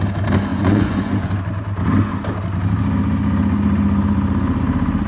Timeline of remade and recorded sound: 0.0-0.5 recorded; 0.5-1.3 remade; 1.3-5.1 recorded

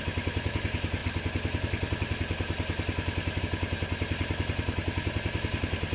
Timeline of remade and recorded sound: 0.0-5.9 recorded

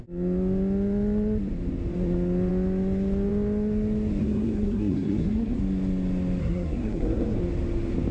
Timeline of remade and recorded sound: 0.0-4.2 recorded; 4.2-5.6 remade; 5.6-6.4 recorded; 6.4-7.4 remade; 7.4-8.1 recorded

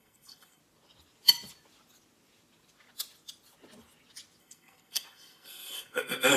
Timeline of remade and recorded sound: 0.0-0.6 remade; 0.6-4.4 recorded; 4.4-6.4 remade

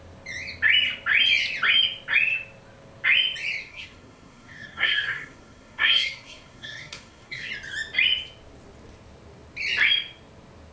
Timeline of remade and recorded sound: 0.0-3.6 recorded; 3.6-7.5 remade; 7.5-10.7 recorded